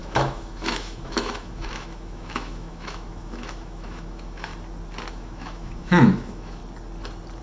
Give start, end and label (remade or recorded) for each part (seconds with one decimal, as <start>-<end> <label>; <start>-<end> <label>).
0.0-4.5 remade; 4.5-5.1 recorded; 5.1-6.6 remade; 6.6-7.4 recorded